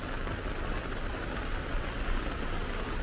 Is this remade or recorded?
recorded